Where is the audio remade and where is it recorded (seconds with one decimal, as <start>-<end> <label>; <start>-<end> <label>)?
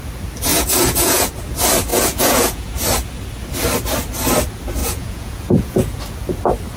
0.0-0.5 recorded; 0.5-1.3 remade; 1.3-1.9 recorded; 1.9-2.7 remade; 2.7-4.8 recorded; 4.8-6.0 remade; 6.0-6.8 recorded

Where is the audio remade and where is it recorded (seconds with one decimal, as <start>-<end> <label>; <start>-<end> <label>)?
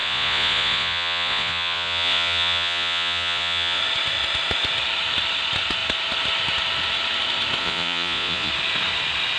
0.0-3.8 remade; 3.8-7.6 recorded; 7.6-8.5 remade; 8.5-9.4 recorded